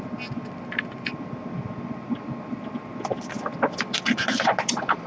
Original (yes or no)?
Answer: yes